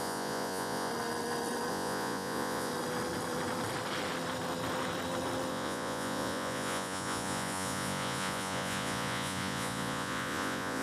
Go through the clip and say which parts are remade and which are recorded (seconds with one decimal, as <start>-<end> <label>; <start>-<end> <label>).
0.0-0.9 remade; 0.9-1.7 recorded; 1.7-2.7 remade; 2.7-5.5 recorded; 5.5-10.8 remade